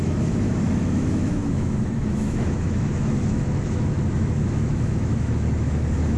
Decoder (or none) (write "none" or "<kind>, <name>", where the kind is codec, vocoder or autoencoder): autoencoder, DAC-VAE